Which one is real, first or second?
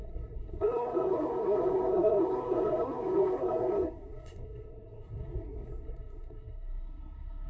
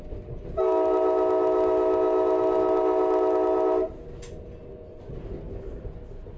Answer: second